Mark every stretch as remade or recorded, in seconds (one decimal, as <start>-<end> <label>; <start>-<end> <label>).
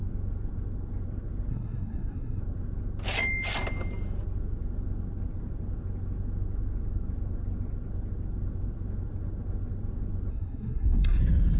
0.0-1.5 recorded; 1.5-2.4 remade; 2.4-10.3 recorded; 10.3-11.2 remade; 11.2-11.6 recorded